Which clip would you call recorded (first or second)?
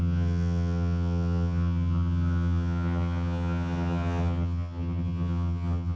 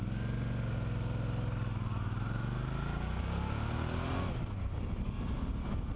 second